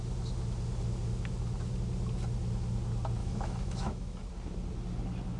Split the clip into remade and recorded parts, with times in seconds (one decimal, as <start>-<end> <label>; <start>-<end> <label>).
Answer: 0.0-3.2 recorded; 3.2-4.2 remade; 4.2-5.4 recorded